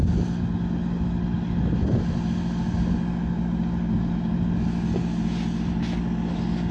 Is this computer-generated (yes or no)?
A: no